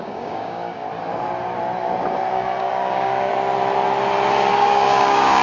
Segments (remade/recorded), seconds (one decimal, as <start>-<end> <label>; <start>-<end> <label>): 0.0-0.8 remade; 0.8-2.3 recorded; 2.3-3.3 remade; 3.3-4.5 recorded; 4.5-5.4 remade

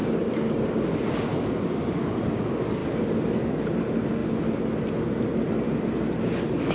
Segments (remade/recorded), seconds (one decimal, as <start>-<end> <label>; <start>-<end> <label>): 0.0-0.9 remade; 0.9-1.3 recorded; 1.3-2.4 remade; 2.4-6.7 recorded

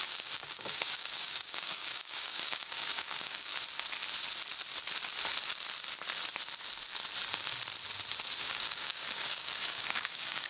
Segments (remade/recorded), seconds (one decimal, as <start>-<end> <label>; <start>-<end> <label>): 0.0-3.5 remade; 3.5-8.4 recorded; 8.4-10.5 remade